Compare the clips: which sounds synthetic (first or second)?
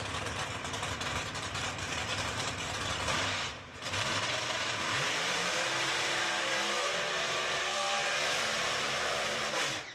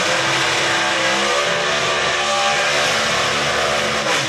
first